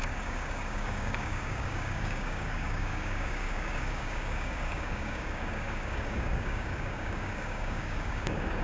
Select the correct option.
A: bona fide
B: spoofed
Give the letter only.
B